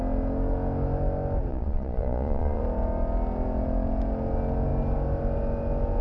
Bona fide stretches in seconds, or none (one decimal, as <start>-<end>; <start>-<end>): 0.0-1.5; 2.6-6.0